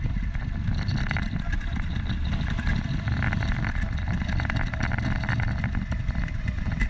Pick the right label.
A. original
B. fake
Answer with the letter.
A